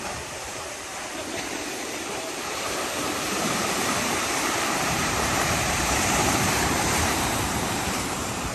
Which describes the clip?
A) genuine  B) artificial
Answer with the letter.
B